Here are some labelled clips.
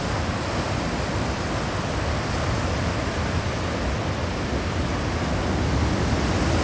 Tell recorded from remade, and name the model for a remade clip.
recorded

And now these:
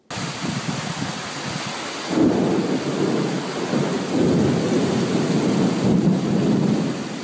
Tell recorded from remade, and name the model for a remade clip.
recorded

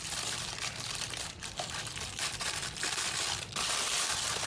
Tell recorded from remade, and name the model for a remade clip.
remade, vocoder, BigVGAN v2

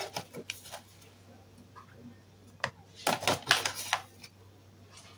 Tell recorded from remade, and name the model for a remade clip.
recorded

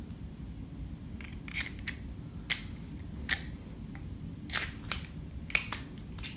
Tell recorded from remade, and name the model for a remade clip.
recorded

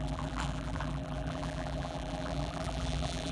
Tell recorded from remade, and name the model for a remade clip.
remade, vocoder, BigVGAN v2